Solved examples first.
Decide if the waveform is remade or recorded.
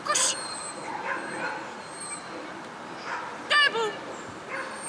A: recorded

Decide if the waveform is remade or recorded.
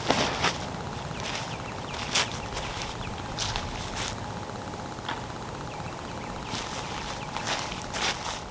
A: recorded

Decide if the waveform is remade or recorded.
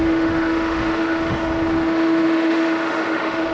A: remade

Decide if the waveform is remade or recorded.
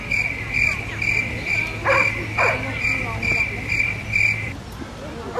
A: recorded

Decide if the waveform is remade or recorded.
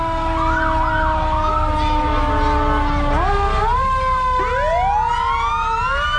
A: recorded